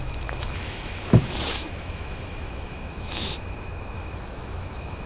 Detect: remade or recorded remade